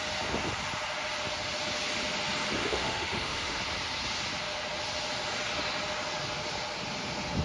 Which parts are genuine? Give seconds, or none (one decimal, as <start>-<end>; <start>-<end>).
0.0-2.6; 3.6-7.4